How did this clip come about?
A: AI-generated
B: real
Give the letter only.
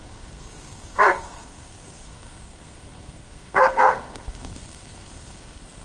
A